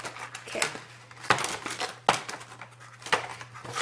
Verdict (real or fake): real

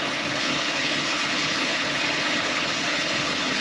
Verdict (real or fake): fake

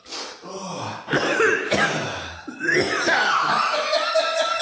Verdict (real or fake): real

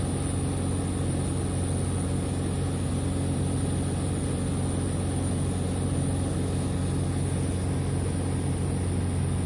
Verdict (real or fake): real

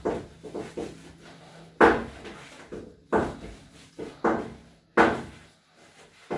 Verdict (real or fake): real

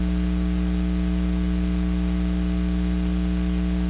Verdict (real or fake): real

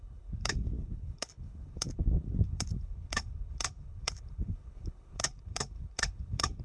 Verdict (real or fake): fake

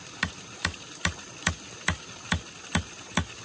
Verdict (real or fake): real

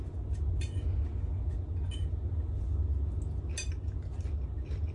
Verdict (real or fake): real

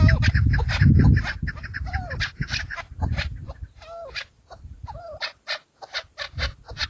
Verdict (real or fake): real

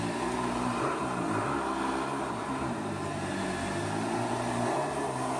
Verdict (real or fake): real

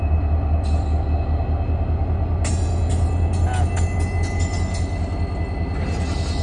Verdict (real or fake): real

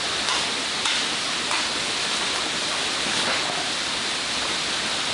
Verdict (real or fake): real